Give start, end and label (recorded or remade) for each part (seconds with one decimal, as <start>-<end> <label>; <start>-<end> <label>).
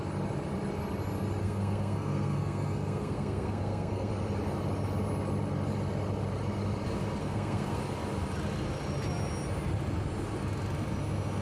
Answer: 0.0-1.4 recorded; 1.4-4.1 remade; 4.1-7.2 recorded; 7.2-7.8 remade; 7.8-11.4 recorded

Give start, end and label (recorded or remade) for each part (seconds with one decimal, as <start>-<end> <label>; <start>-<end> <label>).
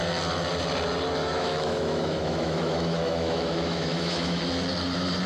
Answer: 0.0-1.2 recorded; 1.2-4.4 remade; 4.4-5.3 recorded